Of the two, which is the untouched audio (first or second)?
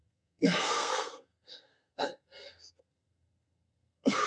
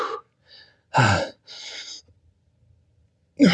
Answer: second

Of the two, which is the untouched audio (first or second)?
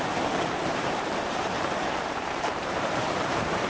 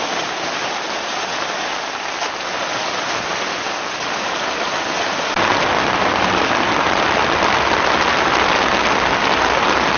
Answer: second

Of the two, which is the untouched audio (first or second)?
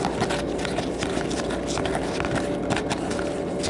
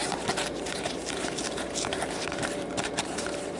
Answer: first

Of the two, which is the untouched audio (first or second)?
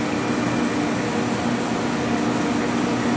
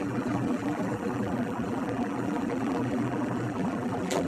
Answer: first